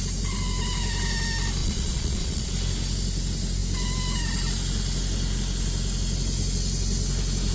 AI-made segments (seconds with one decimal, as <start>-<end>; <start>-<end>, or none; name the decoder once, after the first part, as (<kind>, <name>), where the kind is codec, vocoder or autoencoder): 1.6-2.5 (vocoder, Vocos)